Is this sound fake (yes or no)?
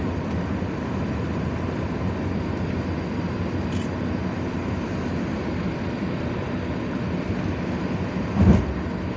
no